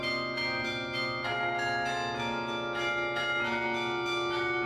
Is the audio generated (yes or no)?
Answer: no